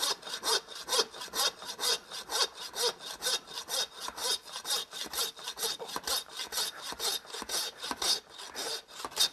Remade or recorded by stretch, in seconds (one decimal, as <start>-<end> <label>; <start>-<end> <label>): 0.0-9.3 recorded